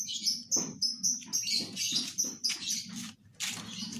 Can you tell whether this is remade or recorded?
recorded